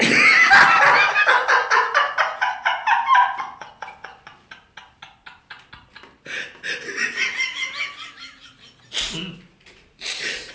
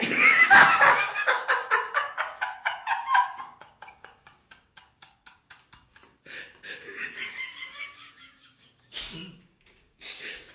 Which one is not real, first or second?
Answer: second